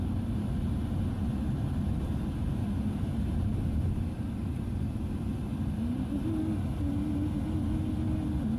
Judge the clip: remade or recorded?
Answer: recorded